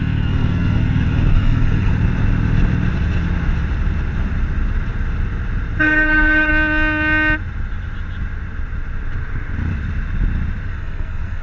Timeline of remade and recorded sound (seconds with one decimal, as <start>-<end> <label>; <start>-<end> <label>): 0.0-1.9 remade; 1.9-5.8 recorded; 5.8-6.5 remade; 6.5-10.7 recorded; 10.7-11.4 remade